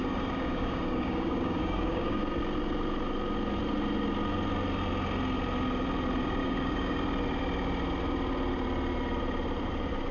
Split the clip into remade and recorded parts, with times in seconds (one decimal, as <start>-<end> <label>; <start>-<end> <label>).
0.0-2.2 remade; 2.2-6.4 recorded; 6.4-7.0 remade; 7.0-10.1 recorded